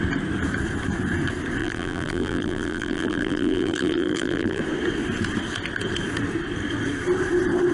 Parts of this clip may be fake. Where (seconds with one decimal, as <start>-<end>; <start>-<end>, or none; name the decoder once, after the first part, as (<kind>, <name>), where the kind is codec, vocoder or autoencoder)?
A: 1.6-4.6 (vocoder, BigVGAN v2)